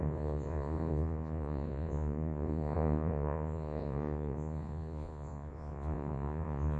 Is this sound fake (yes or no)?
yes